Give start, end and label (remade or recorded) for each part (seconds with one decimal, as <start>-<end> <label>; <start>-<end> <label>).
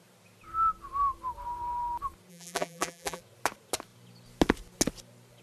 0.0-2.3 recorded; 2.3-3.2 remade; 3.2-5.4 recorded